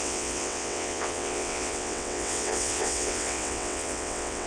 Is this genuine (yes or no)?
no